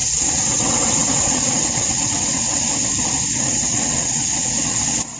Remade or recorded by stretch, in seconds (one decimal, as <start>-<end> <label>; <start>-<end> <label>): 0.0-2.7 remade; 2.7-3.3 recorded; 3.3-5.2 remade